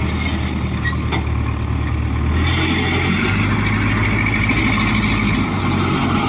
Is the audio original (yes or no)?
yes